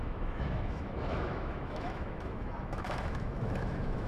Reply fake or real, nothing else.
fake